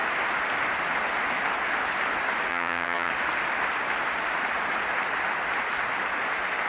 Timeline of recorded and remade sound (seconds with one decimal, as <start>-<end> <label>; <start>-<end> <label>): 0.0-2.5 recorded; 2.5-3.1 remade; 3.1-6.7 recorded